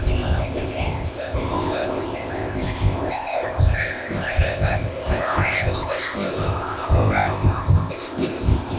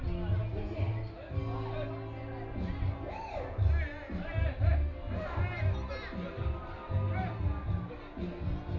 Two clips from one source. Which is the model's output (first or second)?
first